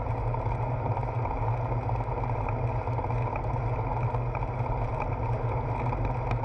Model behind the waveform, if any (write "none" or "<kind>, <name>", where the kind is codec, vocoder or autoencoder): none